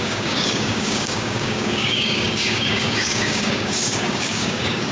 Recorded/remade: remade